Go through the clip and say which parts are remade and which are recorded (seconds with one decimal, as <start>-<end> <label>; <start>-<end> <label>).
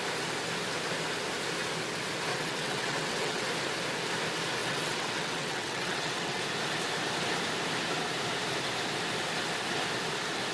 0.0-2.3 recorded; 2.3-3.5 remade; 3.5-4.6 recorded; 4.6-6.4 remade; 6.4-10.5 recorded